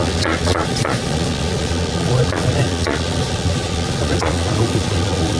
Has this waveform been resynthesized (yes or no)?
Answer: yes